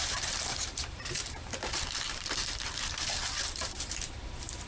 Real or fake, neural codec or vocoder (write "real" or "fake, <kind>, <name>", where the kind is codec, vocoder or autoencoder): fake, vocoder, BigVGAN v2